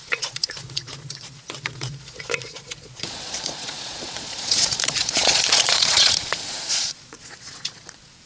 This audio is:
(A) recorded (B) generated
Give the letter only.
B